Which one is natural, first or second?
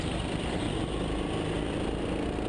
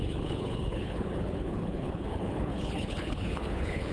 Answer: first